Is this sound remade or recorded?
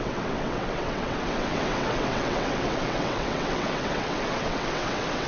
remade